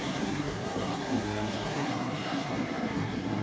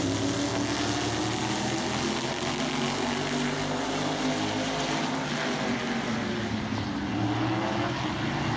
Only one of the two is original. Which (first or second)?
second